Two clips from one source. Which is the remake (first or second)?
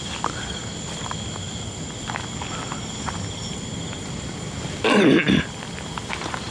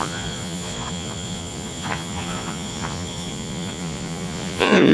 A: second